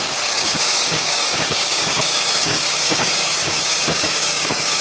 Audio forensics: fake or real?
fake